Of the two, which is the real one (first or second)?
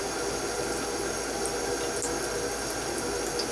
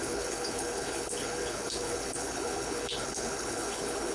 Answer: first